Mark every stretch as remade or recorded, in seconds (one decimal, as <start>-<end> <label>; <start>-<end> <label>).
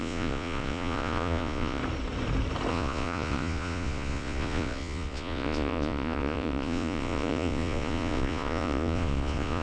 0.0-1.8 remade; 1.8-2.7 recorded; 2.7-9.6 remade